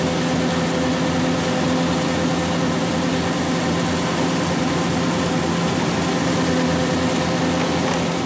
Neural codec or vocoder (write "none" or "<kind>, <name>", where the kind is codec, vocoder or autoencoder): none